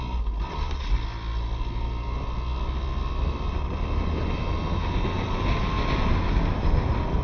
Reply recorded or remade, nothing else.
recorded